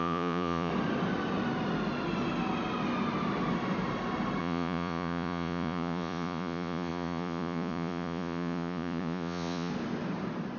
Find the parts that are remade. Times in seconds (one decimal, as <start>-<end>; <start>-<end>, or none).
0.0-0.7; 4.4-9.7